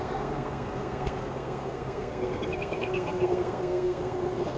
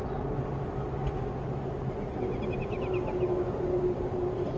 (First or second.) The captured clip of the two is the second